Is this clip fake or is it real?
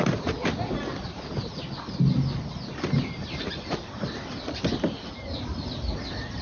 real